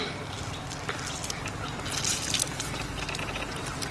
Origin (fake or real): real